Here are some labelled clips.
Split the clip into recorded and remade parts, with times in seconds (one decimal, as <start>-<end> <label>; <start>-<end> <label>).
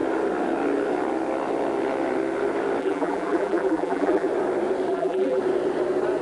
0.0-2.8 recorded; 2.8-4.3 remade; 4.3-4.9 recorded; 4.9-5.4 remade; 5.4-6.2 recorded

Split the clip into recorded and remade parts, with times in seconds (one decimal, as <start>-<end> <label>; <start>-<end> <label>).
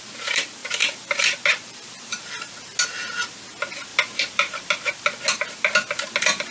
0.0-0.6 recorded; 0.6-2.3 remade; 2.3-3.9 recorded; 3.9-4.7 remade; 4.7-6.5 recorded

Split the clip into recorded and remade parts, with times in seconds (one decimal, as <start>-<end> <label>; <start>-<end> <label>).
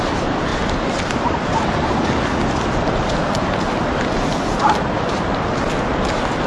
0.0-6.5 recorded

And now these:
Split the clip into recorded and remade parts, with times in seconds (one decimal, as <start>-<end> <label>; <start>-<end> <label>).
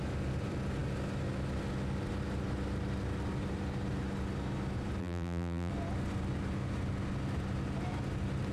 0.0-5.0 recorded; 5.0-5.7 remade; 5.7-8.5 recorded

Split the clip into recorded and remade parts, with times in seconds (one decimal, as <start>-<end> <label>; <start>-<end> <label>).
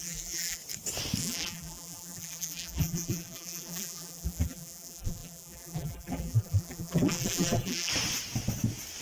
0.0-0.6 remade; 0.6-1.2 recorded; 1.2-7.9 remade; 7.9-9.0 recorded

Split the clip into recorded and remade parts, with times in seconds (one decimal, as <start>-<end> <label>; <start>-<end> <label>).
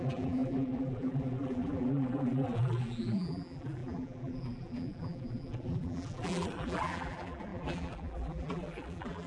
0.0-9.3 remade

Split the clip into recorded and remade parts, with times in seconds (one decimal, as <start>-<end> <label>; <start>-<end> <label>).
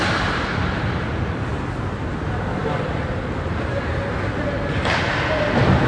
0.0-2.6 recorded; 2.6-3.1 remade; 3.1-5.9 recorded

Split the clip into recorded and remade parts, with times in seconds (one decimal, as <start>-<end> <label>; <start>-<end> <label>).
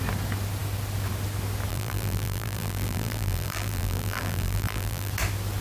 0.0-1.7 recorded; 1.7-5.1 remade; 5.1-5.6 recorded